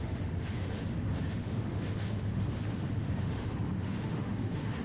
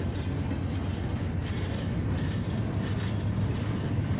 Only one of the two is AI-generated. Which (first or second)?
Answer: first